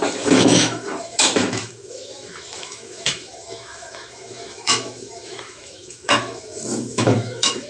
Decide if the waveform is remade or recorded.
remade